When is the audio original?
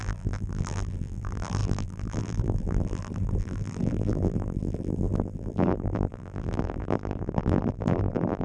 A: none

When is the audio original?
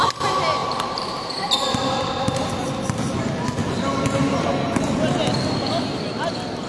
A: 0.0-0.6; 2.5-3.6; 4.5-6.7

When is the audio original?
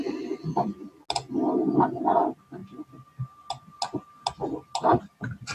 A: 0.0-5.5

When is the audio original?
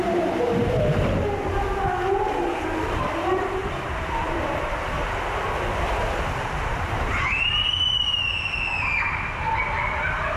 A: 0.0-3.6; 4.8-6.7; 7.7-10.4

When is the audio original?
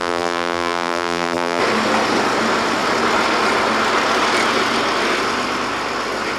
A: 1.6-6.4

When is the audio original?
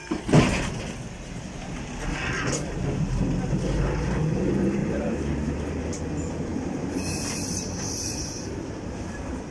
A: 0.0-4.8; 5.6-6.5; 9.1-9.5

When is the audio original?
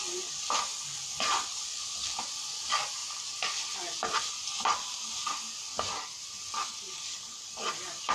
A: 3.0-4.3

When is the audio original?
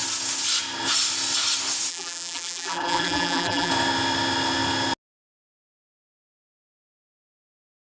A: 0.0-1.9; 3.7-7.9